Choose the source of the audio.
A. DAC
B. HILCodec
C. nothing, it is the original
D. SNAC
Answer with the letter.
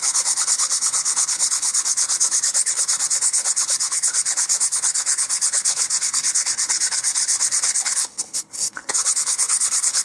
B